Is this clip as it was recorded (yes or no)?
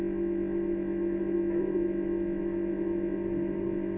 yes